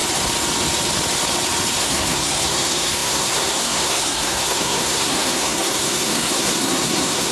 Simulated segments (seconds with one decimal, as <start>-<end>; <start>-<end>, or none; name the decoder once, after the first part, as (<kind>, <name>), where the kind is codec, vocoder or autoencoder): 1.8-7.3 (codec, SNAC)